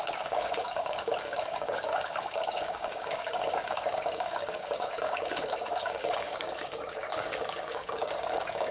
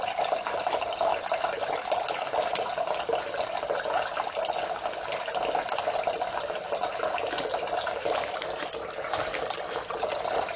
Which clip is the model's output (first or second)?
first